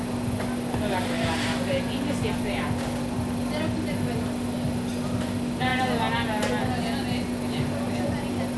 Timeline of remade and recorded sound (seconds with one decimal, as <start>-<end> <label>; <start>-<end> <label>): 0.0-8.6 recorded